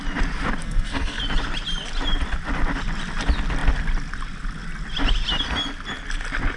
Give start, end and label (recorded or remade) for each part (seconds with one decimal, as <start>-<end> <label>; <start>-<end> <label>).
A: 0.0-0.6 recorded; 0.6-1.2 remade; 1.2-6.6 recorded